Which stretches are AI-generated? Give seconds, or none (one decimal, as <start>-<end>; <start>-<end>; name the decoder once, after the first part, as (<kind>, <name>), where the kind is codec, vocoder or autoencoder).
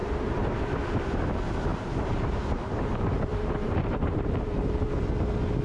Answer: 0.0-0.6 (vocoder, BigVGAN v2); 1.7-5.1